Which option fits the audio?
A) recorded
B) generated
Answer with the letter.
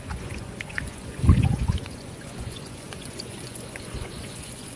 B